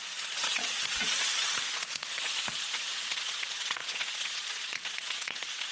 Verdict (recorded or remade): remade